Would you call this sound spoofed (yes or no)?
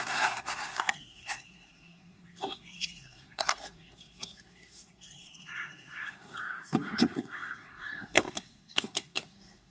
yes